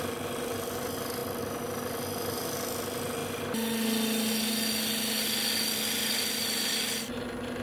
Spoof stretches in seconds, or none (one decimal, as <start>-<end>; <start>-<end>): none